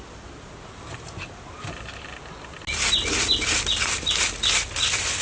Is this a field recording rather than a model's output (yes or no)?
yes